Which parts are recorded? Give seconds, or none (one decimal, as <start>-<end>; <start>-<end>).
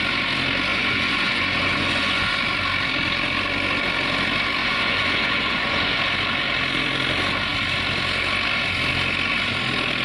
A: 0.0-0.7; 2.3-4.6; 6.0-10.0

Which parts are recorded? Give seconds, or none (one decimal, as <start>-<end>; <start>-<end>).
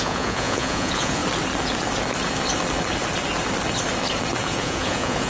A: 1.2-4.4